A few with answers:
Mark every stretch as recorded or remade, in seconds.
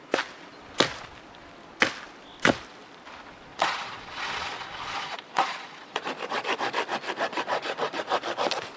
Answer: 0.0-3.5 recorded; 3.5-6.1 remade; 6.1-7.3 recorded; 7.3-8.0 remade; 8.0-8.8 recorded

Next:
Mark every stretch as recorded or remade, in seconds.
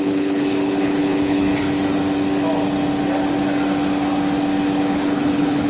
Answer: 0.0-1.5 remade; 1.5-4.9 recorded; 4.9-5.7 remade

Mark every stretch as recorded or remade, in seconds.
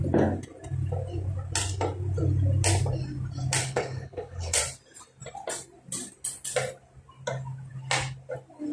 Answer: 0.0-3.6 recorded; 3.6-4.6 remade; 4.6-8.7 recorded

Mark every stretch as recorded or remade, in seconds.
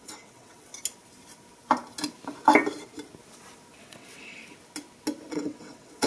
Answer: 0.0-0.7 remade; 0.7-3.8 recorded; 3.8-4.4 remade; 4.4-5.3 recorded; 5.3-6.1 remade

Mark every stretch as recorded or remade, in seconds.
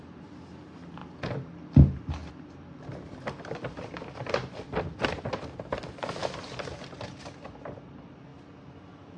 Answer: 0.0-6.2 remade; 6.2-7.9 recorded; 7.9-9.2 remade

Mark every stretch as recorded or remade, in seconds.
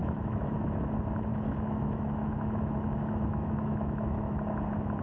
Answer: 0.0-0.9 remade; 0.9-1.3 recorded; 1.3-4.3 remade; 4.3-5.0 recorded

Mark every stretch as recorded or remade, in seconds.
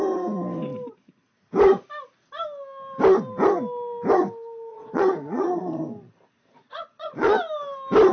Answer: 0.0-4.7 recorded; 4.7-5.8 remade; 5.8-6.5 recorded; 6.5-7.4 remade; 7.4-8.1 recorded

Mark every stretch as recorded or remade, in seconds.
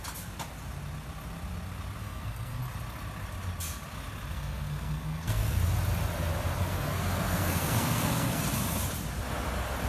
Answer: 0.0-2.0 recorded; 2.0-2.6 remade; 2.6-4.3 recorded; 4.3-5.6 remade; 5.6-6.6 recorded; 6.6-8.4 remade; 8.4-9.9 recorded